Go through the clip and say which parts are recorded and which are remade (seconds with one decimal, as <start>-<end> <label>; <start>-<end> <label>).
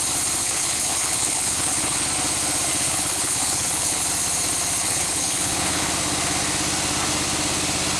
0.0-0.4 recorded; 0.4-2.0 remade; 2.0-2.7 recorded; 2.7-4.0 remade; 4.0-4.8 recorded; 4.8-5.9 remade; 5.9-8.0 recorded